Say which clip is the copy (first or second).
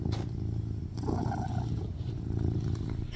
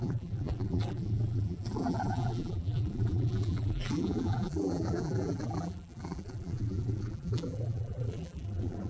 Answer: second